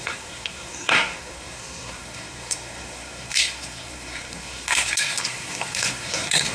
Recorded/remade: remade